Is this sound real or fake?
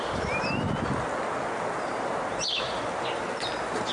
real